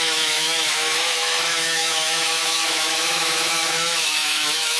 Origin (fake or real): fake